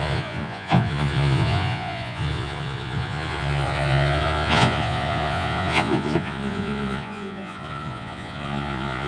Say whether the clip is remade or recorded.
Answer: remade